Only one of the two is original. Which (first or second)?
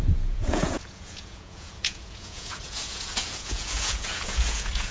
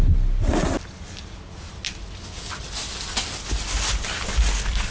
second